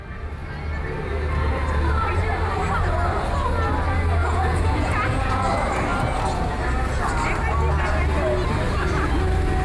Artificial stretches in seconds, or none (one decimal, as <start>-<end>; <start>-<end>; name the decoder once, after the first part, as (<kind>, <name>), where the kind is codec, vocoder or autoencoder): 4.2-5.5 (vocoder, Vocos)